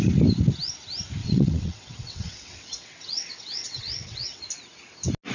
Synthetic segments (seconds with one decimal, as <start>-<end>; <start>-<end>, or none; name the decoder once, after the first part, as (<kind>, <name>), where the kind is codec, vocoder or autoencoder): 1.2-4.4 (vocoder, WaveNeXt)